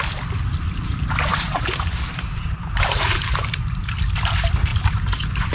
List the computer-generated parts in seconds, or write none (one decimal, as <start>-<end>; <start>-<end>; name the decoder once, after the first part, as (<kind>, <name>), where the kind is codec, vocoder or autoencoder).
1.3-3.8 (vocoder, BigVGAN v2); 4.7-5.5